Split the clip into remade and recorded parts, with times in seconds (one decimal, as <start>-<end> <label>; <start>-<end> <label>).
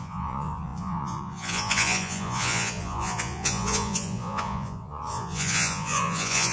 0.0-6.5 remade